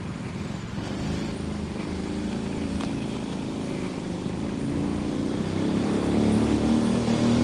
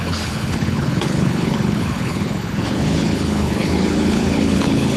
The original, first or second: first